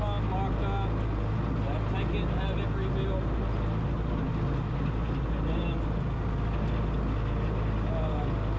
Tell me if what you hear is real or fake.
real